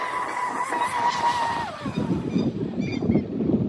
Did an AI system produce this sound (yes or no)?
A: no